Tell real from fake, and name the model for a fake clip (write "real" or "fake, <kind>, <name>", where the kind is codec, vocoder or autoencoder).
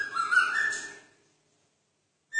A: real